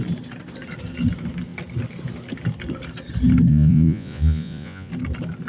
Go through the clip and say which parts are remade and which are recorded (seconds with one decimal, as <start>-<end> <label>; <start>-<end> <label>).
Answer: 0.0-3.5 recorded; 3.5-4.9 remade; 4.9-5.5 recorded